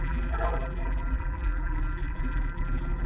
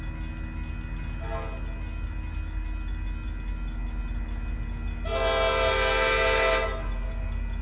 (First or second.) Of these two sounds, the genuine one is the second